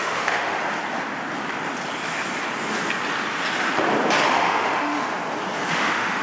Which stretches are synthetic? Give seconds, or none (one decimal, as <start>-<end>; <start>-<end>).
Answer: 0.0-0.6; 4.3-5.1; 5.7-6.2